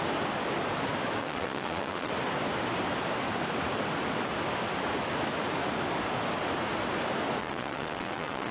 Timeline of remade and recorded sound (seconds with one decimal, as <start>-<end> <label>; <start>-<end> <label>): 0.0-1.2 recorded; 1.2-2.1 remade; 2.1-7.4 recorded; 7.4-8.5 remade